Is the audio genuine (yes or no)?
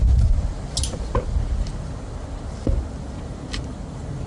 yes